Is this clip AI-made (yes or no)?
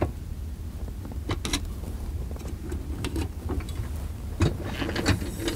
no